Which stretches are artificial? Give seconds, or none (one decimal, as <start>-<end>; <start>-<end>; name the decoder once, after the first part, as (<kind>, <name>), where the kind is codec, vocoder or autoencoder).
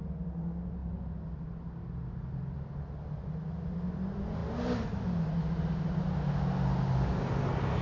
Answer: none